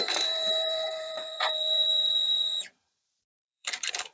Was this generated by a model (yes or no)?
yes